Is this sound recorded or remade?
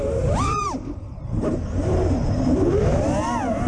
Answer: remade